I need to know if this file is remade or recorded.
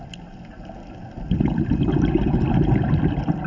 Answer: recorded